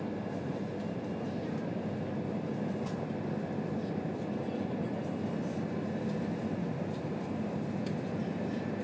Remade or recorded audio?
remade